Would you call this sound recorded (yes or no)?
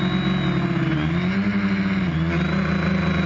yes